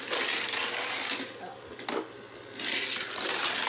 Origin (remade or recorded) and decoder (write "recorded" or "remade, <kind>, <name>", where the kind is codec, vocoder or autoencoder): recorded